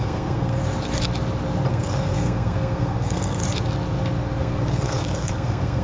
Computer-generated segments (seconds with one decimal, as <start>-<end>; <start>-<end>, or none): 0.0-0.6; 1.7-3.4; 4.4-5.8